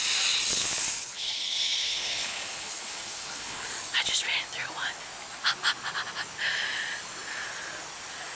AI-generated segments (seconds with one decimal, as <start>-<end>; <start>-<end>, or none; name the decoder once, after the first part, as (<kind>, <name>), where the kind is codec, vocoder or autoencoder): 0.5-3.7 (codec, HILCodec)